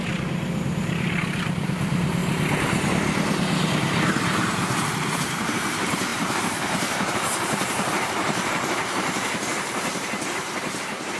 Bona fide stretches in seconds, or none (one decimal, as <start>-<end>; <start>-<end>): 2.2-4.4